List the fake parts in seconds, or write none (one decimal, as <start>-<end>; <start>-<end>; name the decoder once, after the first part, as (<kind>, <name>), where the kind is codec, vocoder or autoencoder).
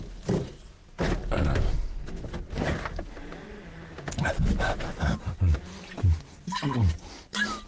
4.2-5.3 (vocoder, BigVGAN v2); 5.7-6.3